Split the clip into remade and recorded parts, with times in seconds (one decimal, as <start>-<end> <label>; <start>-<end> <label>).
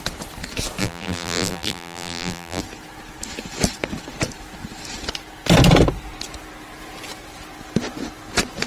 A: 0.0-0.8 recorded; 0.8-2.6 remade; 2.6-8.7 recorded